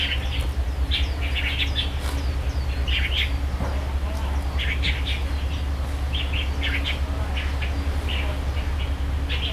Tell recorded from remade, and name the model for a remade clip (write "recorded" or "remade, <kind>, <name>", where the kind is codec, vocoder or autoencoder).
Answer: recorded